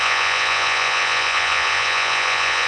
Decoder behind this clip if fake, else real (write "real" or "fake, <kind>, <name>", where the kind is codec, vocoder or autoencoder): fake, vocoder, Vocos